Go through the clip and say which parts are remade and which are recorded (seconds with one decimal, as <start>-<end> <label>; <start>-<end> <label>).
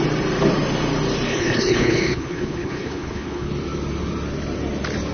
0.0-1.3 recorded; 1.3-3.5 remade; 3.5-5.1 recorded